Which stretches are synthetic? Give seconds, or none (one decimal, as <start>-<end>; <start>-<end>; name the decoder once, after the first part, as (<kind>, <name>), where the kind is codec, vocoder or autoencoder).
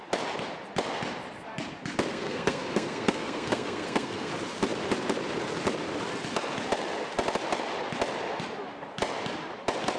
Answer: 2.1-4.3 (codec, SNAC)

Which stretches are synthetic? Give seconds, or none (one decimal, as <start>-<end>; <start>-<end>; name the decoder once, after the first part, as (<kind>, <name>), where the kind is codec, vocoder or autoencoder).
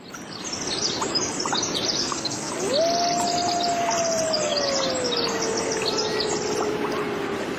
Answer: 2.0-2.5 (codec, SNAC)